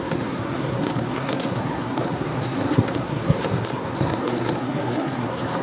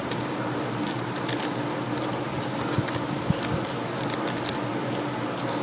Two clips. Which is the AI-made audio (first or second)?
first